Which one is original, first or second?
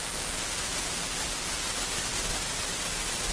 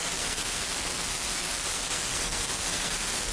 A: first